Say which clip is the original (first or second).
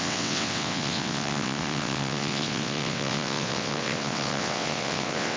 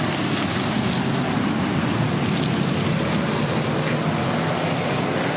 second